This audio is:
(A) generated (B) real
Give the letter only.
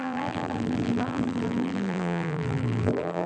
A